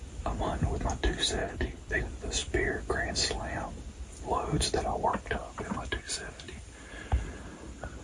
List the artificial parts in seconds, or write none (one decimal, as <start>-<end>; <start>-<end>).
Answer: 1.4-2.0